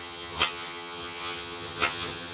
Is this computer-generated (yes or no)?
yes